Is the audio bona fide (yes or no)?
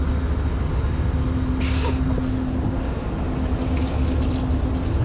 yes